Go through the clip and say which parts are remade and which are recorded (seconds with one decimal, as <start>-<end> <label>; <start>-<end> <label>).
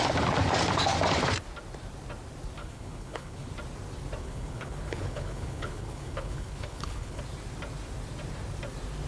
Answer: 0.0-2.6 recorded; 2.6-3.5 remade; 3.5-4.2 recorded; 4.2-7.2 remade; 7.2-9.1 recorded